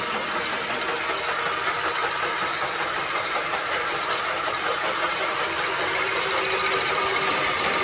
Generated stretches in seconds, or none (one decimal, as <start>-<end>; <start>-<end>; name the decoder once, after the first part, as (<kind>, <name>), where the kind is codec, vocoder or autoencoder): 2.0-4.6 (vocoder, BigVGAN v2)